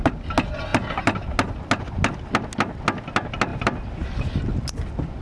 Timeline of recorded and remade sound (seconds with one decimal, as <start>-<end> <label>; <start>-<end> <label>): 0.0-3.5 recorded; 3.5-4.4 remade; 4.4-5.2 recorded